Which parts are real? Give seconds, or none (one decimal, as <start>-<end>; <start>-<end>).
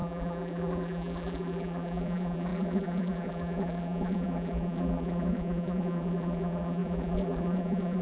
none